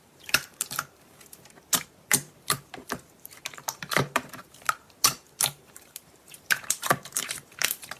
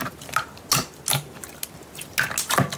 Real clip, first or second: second